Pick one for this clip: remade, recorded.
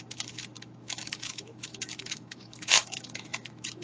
remade